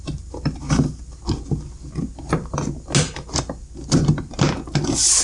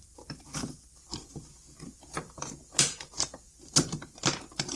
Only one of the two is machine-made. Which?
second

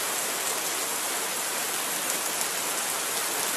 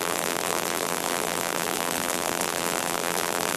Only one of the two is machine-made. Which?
second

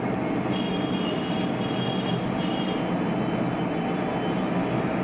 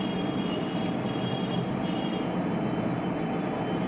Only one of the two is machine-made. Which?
second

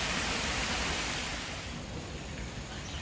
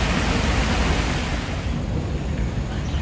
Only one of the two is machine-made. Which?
first